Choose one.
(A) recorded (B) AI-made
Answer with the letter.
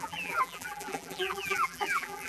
B